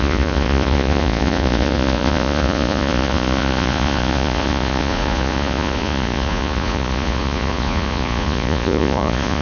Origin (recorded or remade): remade